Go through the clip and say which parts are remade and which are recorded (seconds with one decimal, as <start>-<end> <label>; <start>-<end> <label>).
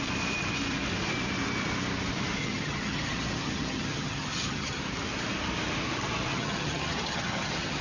0.0-2.4 recorded; 2.4-4.8 remade; 4.8-6.3 recorded; 6.3-7.8 remade